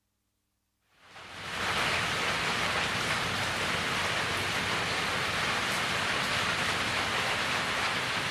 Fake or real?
real